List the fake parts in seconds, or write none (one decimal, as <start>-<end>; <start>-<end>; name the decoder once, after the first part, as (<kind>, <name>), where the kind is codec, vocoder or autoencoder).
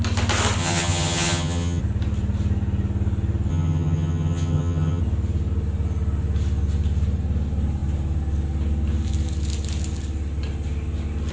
0.6-1.8 (vocoder, HiFi-GAN); 3.5-5.0